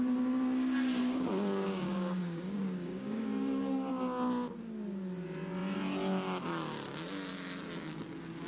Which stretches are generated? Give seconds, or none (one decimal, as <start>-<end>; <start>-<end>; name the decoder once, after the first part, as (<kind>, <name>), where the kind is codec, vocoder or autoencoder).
1.0-3.9 (codec, DAC)